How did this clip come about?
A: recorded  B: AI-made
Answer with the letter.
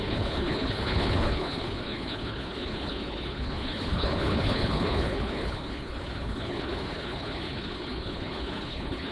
B